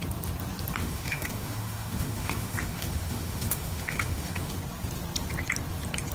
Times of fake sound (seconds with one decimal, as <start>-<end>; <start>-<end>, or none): 0.8-4.5